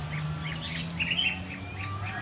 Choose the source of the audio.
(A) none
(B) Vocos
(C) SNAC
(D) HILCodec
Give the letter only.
A